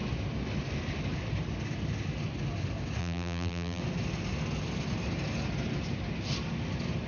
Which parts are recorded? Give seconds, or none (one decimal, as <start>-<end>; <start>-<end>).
0.0-3.0; 3.8-7.1